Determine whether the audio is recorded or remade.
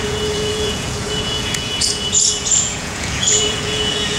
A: remade